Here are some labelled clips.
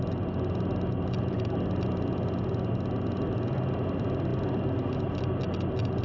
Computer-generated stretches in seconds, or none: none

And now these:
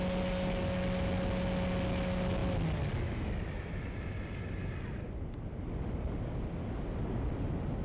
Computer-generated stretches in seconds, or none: 2.4-4.4 (vocoder, BigVGAN v2)

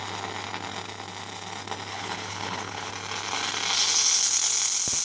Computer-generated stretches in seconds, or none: 1.9-2.9 (codec, HILCodec)

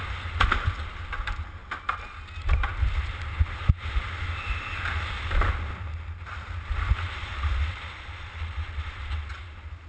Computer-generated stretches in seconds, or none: none

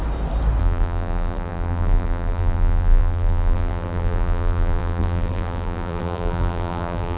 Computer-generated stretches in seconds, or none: 0.6-7.2 (vocoder, BigVGAN v2)

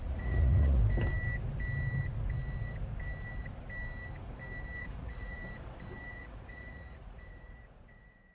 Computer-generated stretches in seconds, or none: 0.0-0.8 (vocoder, Vocos); 4.8-5.4; 6.0-8.3

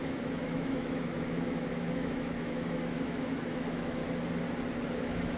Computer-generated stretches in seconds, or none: 0.0-4.0 (autoencoder, DAC-VAE); 5.0-5.4